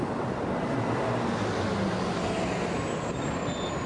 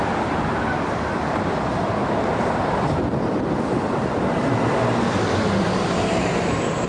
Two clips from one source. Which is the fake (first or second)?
second